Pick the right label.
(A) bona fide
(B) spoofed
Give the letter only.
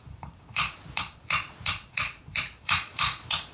B